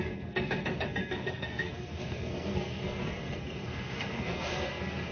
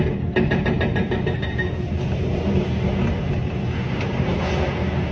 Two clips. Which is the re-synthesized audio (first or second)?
first